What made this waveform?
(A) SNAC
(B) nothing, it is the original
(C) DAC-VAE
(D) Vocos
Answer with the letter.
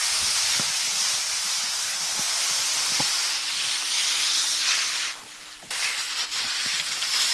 B